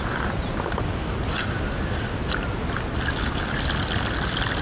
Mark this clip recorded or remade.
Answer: recorded